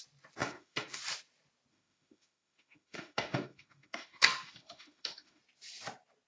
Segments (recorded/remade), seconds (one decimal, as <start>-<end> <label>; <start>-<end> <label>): 0.0-0.4 recorded; 0.4-1.0 remade; 1.0-1.7 recorded; 1.7-5.4 remade; 5.4-6.3 recorded